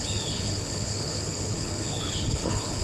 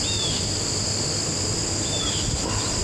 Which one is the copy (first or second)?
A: first